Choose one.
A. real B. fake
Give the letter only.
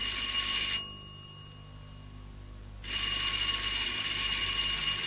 A